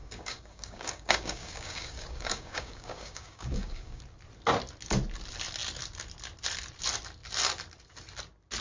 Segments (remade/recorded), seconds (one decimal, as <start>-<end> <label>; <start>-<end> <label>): 0.0-4.0 remade; 4.0-8.6 recorded